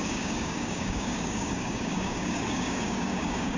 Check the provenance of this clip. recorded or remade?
remade